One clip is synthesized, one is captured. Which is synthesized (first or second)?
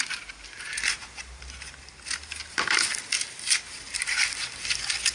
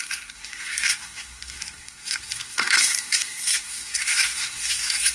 second